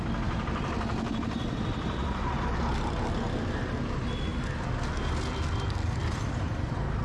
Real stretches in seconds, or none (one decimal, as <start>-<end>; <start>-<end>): 0.0-0.9; 2.3-6.0